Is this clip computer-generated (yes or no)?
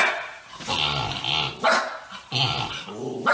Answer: no